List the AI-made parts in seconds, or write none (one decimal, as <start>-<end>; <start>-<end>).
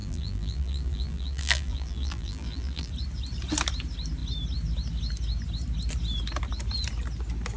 0.0-2.9